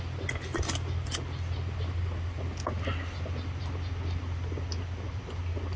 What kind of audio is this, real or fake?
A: real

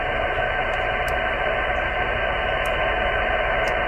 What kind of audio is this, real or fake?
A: real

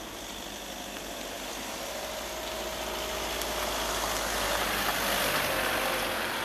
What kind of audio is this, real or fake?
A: real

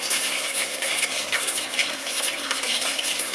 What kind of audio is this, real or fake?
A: fake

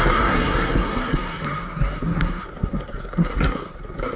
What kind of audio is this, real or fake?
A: fake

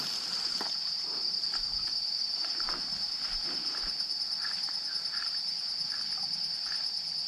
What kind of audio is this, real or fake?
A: real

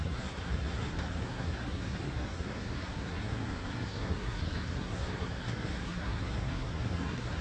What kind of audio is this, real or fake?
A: fake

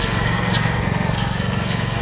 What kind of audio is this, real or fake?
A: fake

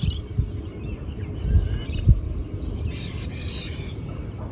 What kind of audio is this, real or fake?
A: real